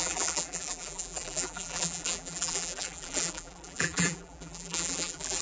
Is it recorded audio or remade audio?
remade